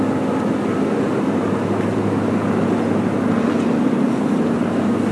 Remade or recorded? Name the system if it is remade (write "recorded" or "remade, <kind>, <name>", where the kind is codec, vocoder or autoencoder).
recorded